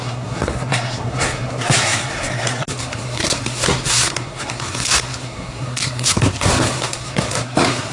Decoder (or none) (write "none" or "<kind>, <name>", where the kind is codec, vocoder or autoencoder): codec, SNAC